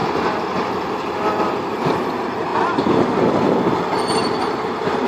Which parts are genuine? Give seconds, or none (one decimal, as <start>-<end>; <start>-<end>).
0.0-1.4; 2.5-3.8